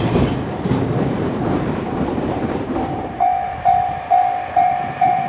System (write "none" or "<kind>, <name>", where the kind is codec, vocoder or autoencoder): vocoder, BigVGAN v2